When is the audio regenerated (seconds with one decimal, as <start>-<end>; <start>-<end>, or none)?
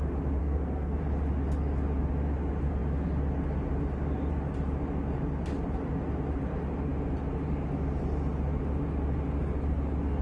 0.4-1.0